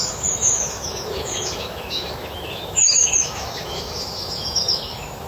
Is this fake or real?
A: fake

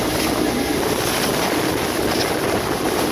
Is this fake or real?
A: real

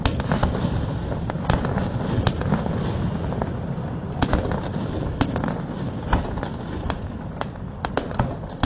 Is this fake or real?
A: real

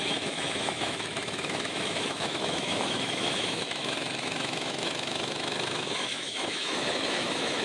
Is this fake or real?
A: fake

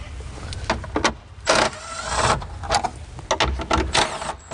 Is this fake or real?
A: real